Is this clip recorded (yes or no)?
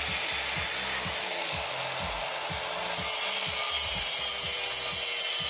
yes